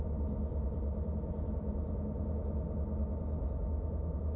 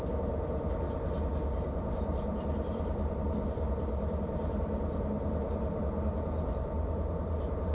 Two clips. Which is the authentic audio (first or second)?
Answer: first